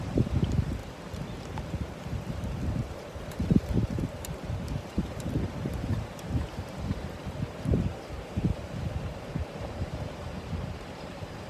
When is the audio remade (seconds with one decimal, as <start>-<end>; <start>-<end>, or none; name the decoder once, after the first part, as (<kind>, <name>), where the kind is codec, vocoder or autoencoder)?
0.0-0.8 (vocoder, BigVGAN v2); 1.4-11.5